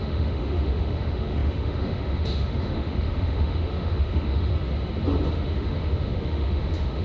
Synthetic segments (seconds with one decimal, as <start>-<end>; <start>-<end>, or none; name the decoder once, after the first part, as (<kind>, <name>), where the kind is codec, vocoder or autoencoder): 0.0-4.5 (autoencoder, DAC-VAE); 5.3-7.0